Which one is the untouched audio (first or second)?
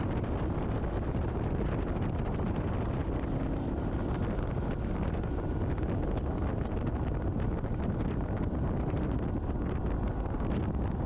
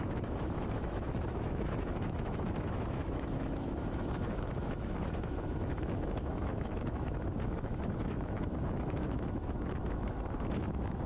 first